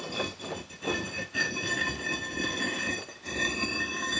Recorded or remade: recorded